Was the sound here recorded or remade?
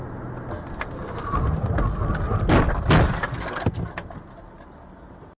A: recorded